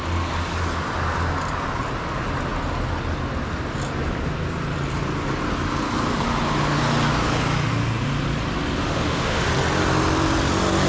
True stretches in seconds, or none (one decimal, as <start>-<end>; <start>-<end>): 0.0-8.8; 9.5-10.9